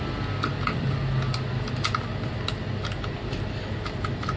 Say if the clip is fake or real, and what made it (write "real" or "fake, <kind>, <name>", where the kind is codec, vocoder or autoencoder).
real